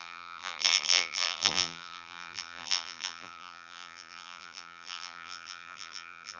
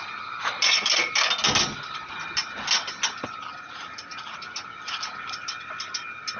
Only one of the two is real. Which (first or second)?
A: second